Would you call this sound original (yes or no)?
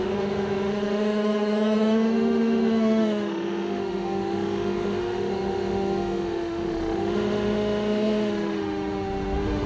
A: no